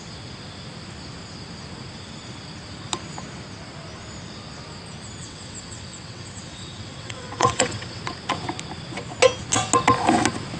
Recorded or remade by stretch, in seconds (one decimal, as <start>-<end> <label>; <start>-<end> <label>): 0.0-5.2 recorded; 5.2-8.0 remade; 8.0-10.6 recorded